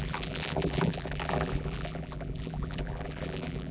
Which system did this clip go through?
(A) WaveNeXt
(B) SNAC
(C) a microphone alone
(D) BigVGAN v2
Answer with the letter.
D